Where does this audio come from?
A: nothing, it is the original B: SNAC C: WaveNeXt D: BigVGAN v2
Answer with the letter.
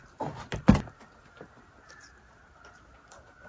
A